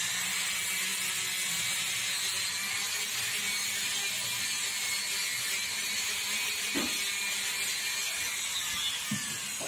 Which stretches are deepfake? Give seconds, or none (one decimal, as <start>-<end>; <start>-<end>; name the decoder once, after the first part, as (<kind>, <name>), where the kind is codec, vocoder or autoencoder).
none